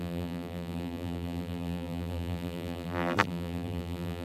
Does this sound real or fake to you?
fake